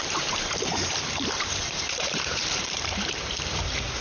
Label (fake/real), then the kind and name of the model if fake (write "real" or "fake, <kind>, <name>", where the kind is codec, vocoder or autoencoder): fake, vocoder, BigVGAN v2